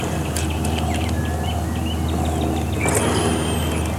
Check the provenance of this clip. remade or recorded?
recorded